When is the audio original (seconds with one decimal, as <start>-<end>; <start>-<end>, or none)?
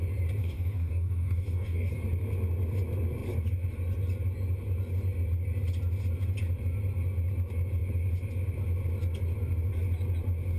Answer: 0.0-0.4; 1.9-10.6